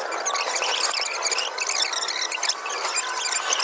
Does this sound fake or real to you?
real